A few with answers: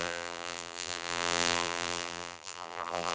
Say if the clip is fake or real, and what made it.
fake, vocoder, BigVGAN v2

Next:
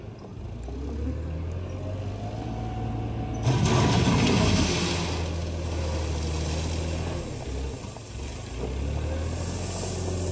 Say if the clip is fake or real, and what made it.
real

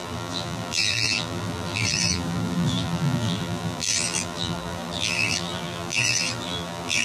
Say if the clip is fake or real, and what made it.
fake, vocoder, BigVGAN v2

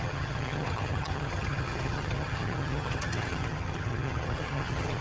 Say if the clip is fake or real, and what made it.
fake, vocoder, HiFi-GAN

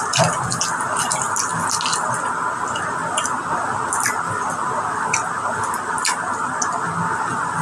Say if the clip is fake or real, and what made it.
real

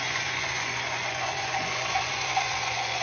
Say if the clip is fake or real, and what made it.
fake, vocoder, Vocos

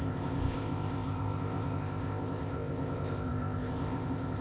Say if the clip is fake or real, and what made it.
fake, codec, ZipCodec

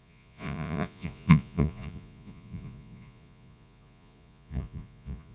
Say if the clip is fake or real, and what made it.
fake, vocoder, Vocos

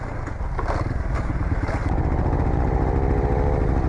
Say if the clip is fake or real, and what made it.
real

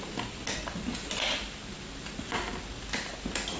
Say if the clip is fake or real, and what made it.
real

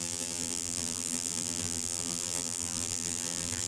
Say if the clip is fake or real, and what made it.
fake, vocoder, BigVGAN v2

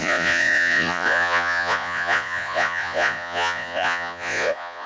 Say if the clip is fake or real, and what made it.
fake, vocoder, Vocos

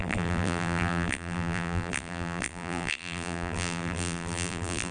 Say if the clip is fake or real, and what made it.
fake, vocoder, BigVGAN v2